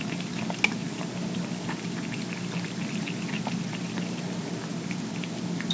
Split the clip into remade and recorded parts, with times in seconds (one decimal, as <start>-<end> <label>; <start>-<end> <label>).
0.0-5.7 recorded